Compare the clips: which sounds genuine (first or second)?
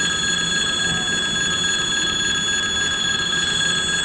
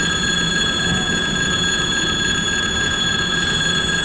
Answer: first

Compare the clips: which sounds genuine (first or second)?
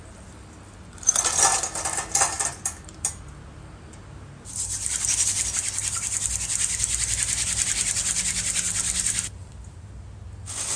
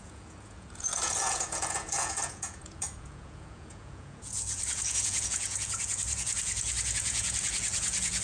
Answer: first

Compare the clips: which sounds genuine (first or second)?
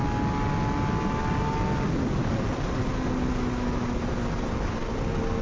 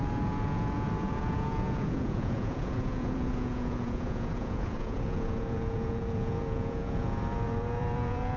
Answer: first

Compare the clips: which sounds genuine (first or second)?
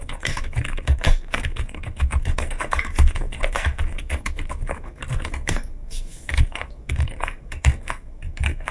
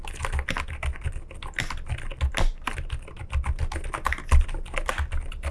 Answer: second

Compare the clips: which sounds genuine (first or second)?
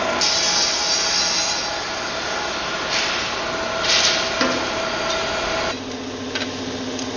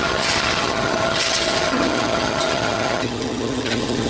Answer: first